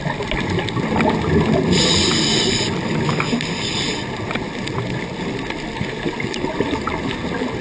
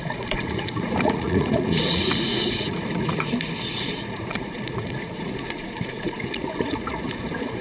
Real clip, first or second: first